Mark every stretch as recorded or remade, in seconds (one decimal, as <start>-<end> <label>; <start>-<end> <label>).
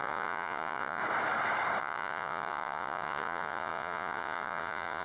0.0-1.0 remade; 1.0-1.8 recorded; 1.8-5.0 remade